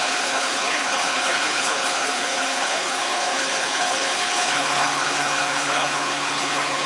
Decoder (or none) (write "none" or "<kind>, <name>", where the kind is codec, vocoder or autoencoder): codec, HILCodec